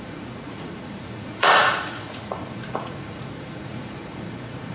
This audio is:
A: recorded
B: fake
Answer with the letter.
B